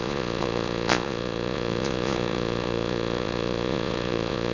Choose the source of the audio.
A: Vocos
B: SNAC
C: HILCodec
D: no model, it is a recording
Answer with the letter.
A